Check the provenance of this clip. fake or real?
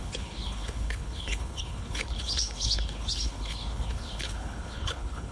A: fake